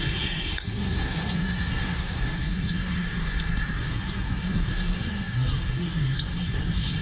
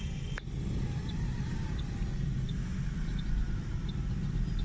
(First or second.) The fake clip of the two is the first